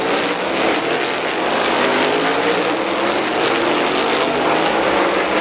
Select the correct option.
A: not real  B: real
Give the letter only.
B